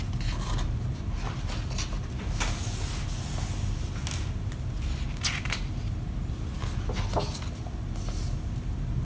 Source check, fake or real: real